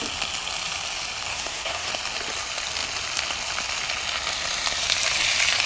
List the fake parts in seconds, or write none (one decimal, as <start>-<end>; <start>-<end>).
1.3-1.9

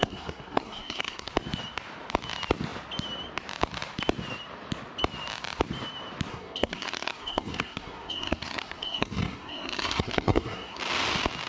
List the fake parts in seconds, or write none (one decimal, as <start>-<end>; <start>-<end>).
0.0-1.3; 6.3-10.8

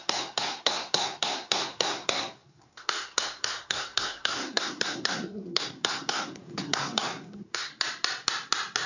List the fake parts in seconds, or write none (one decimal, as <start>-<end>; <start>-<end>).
0.0-7.7

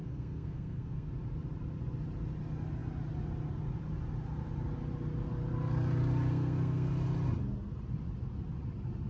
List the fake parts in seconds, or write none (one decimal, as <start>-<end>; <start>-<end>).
0.0-1.1; 6.3-6.9